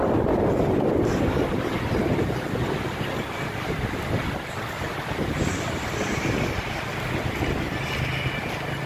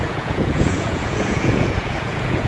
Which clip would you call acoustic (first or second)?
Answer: first